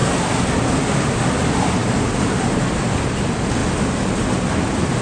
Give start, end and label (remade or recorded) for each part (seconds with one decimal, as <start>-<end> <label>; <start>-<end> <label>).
0.0-1.8 recorded; 1.8-3.1 remade; 3.1-5.0 recorded